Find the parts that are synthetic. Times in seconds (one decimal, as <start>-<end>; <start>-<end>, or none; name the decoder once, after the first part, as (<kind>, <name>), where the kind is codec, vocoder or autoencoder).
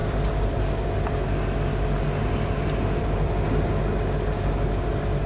none